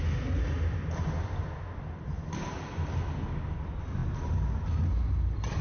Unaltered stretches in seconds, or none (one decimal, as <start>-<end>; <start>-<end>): 0.0-5.6